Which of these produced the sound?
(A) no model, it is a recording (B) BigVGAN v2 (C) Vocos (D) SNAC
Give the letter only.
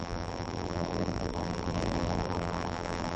B